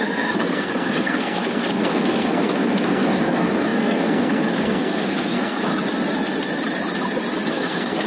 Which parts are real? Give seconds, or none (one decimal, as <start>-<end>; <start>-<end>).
5.7-7.5